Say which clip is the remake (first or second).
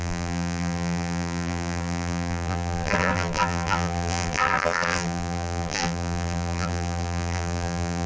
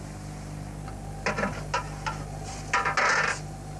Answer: first